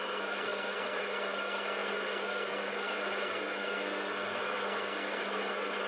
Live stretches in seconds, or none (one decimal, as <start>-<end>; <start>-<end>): none